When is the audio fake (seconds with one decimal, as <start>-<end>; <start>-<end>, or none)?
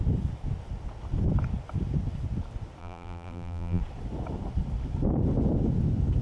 2.8-3.8